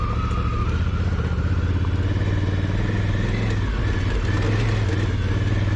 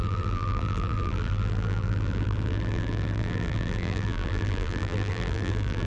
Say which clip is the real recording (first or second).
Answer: first